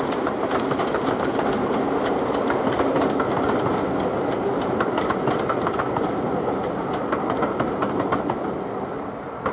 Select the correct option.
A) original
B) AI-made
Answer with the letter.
A